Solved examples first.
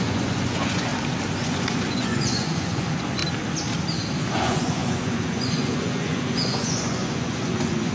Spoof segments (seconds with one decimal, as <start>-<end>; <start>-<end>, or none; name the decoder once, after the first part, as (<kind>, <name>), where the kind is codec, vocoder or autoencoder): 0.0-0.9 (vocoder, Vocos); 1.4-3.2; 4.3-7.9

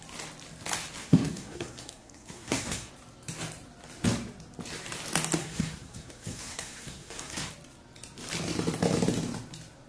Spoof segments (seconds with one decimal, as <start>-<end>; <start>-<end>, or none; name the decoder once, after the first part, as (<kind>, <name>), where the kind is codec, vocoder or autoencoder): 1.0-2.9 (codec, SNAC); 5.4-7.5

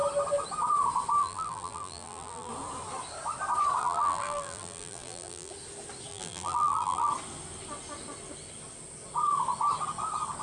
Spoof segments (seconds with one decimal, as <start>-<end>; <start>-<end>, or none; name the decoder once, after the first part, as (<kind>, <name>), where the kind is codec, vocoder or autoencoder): 1.2-2.5 (vocoder, BigVGAN v2); 3.8-5.5; 6.1-7.1